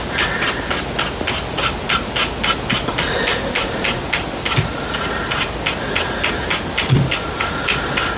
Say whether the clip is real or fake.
real